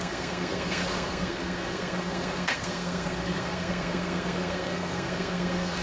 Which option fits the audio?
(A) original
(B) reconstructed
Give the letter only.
B